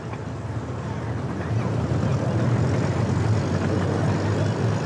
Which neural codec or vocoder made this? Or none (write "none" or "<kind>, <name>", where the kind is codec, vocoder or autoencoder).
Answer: none